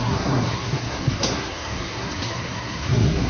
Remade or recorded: remade